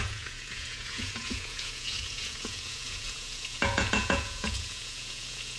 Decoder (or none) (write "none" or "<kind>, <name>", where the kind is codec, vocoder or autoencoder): vocoder, Vocos